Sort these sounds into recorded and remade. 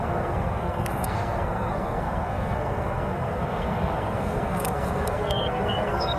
remade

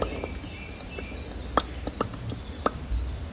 recorded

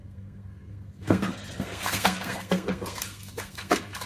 remade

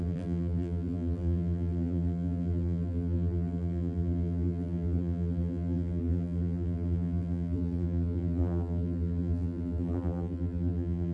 remade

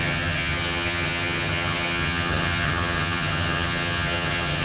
remade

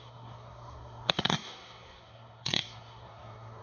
remade